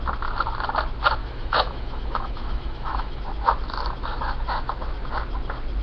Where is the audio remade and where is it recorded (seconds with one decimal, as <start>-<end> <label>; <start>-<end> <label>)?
0.0-1.2 recorded; 1.2-3.2 remade; 3.2-5.8 recorded